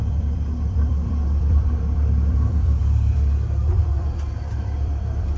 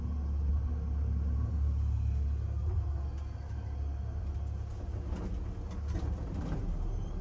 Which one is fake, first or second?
first